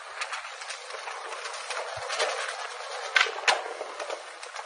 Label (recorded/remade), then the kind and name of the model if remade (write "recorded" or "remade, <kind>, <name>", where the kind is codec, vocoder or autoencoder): recorded